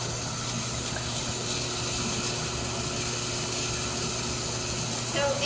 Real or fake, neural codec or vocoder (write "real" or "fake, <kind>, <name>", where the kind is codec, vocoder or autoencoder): real